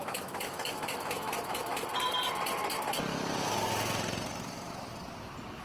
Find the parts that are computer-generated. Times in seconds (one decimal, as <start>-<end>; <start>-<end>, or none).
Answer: 0.0-1.8